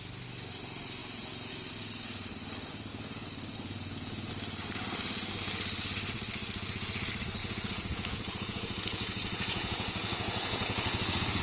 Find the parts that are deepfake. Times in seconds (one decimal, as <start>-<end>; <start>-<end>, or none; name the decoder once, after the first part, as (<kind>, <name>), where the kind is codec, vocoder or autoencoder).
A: 1.0-1.5 (vocoder, Vocos); 2.9-4.3; 7.4-11.4